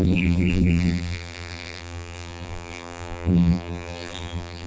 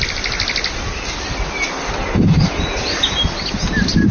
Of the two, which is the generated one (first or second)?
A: first